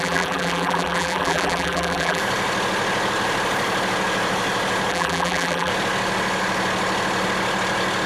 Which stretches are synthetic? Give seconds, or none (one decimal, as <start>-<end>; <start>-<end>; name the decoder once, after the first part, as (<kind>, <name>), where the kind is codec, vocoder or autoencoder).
0.0-2.2 (vocoder, BigVGAN v2); 4.9-5.7

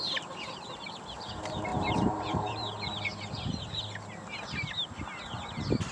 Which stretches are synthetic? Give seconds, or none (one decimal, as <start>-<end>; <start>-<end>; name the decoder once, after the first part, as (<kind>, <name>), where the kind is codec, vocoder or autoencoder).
1.7-3.8 (vocoder, BigVGAN v2)

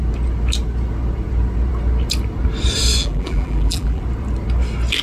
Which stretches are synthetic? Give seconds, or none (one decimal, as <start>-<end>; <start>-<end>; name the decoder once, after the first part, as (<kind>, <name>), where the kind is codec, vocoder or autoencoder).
3.0-4.0 (vocoder, BigVGAN v2)

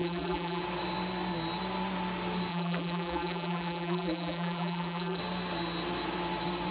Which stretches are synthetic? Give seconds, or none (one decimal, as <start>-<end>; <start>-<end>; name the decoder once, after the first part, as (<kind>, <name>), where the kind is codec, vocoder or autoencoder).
0.0-0.6 (vocoder, BigVGAN v2); 2.5-5.2

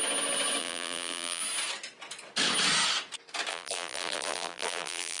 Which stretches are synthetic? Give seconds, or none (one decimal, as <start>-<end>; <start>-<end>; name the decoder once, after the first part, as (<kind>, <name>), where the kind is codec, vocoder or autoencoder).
0.6-1.4 (vocoder, BigVGAN v2); 3.5-5.2

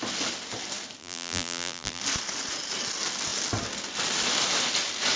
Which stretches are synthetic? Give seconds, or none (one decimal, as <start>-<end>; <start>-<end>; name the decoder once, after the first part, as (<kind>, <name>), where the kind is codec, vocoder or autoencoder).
1.0-2.0 (vocoder, BigVGAN v2)

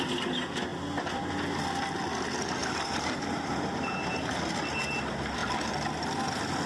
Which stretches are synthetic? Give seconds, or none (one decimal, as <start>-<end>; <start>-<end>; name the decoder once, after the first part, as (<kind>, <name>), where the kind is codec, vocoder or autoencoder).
2.6-4.6 (vocoder, BigVGAN v2)